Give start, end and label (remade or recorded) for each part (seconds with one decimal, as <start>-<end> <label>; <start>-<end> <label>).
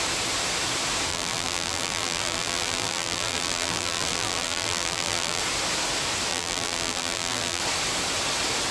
0.0-1.1 recorded; 1.1-5.4 remade; 5.4-6.3 recorded; 6.3-7.6 remade; 7.6-8.7 recorded